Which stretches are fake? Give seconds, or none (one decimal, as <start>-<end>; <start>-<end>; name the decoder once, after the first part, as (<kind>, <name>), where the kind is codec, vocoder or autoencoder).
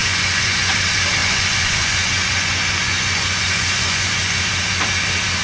0.0-0.7 (vocoder, Vocos); 1.2-4.4